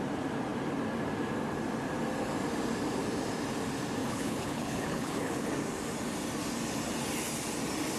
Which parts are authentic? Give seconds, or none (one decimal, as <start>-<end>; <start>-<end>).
0.0-4.0; 5.5-8.0